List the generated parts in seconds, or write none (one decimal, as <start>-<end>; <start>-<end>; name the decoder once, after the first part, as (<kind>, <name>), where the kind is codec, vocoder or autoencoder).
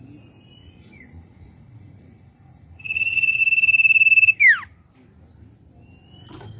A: 0.6-3.4 (vocoder, Vocos)